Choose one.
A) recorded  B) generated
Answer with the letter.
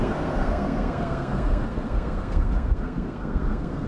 B